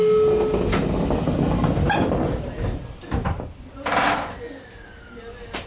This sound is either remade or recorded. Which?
recorded